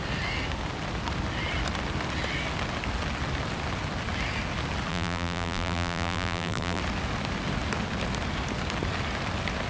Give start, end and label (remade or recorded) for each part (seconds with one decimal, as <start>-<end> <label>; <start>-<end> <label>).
0.0-4.9 recorded; 4.9-6.8 remade; 6.8-9.7 recorded